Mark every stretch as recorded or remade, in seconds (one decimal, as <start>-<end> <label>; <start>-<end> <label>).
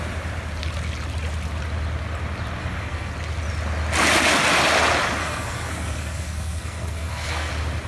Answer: 0.0-2.6 recorded; 2.6-3.1 remade; 3.1-5.2 recorded; 5.2-7.5 remade; 7.5-7.9 recorded